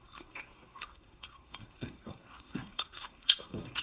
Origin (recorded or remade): remade